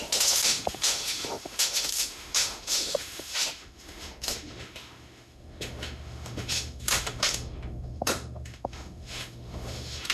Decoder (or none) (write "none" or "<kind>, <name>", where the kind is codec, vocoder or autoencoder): autoencoder, DAC-VAE